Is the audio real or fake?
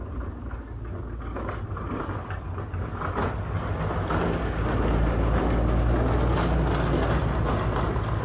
real